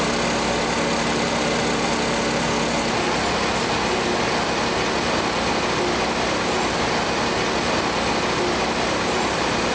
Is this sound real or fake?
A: real